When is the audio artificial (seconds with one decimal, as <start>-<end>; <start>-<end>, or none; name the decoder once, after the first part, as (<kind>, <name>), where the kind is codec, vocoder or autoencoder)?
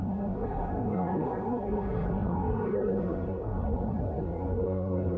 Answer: 0.0-5.2 (codec, SNAC)